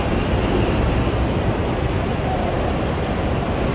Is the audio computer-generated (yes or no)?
no